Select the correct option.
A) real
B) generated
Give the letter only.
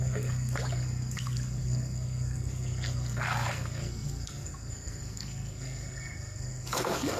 B